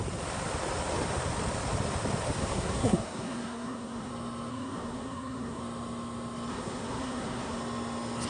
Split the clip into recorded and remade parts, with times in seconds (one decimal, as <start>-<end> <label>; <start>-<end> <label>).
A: 0.0-2.4 recorded; 2.4-4.1 remade; 4.1-4.5 recorded; 4.5-5.6 remade; 5.6-6.5 recorded; 6.5-7.6 remade; 7.6-8.3 recorded